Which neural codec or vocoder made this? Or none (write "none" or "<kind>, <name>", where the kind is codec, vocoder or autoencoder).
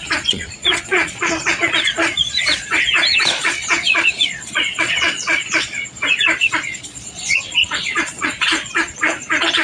vocoder, Vocos